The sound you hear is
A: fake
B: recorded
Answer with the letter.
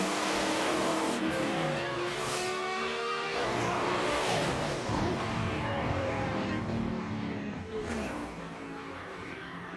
A